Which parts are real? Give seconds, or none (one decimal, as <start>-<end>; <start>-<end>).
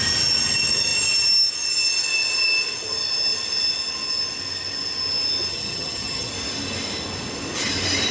0.0-5.5; 6.3-8.1